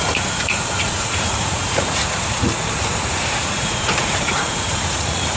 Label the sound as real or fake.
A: fake